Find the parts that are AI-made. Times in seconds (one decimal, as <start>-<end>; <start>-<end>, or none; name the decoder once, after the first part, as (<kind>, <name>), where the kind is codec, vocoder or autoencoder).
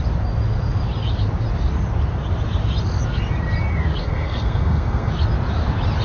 4.0-5.1 (codec, SNAC)